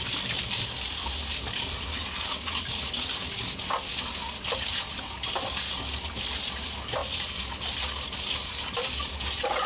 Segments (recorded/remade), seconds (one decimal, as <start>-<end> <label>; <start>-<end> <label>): 0.0-9.7 recorded